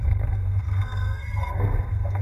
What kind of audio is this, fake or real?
fake